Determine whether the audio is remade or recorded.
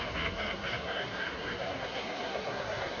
remade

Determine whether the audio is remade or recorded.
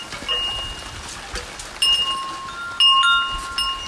recorded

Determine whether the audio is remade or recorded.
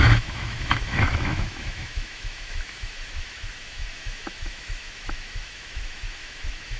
remade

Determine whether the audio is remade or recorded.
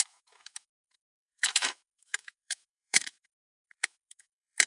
remade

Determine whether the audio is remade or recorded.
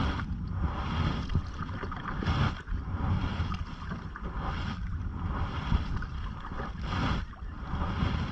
recorded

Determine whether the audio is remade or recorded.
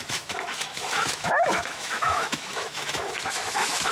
remade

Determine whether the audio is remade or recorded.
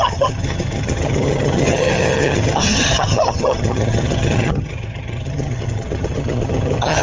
remade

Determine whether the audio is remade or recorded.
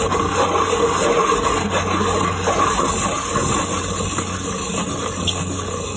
recorded